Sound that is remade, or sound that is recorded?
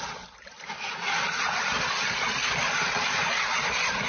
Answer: recorded